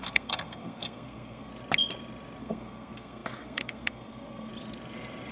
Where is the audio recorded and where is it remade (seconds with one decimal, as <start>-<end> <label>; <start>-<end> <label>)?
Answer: 0.0-1.5 remade; 1.5-2.4 recorded; 2.4-4.5 remade; 4.5-5.3 recorded